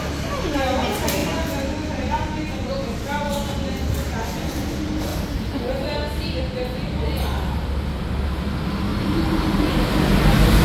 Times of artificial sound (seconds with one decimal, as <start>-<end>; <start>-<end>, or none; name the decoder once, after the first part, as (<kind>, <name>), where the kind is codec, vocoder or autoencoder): 5.1-5.7 (vocoder, BigVGAN v2); 8.9-10.1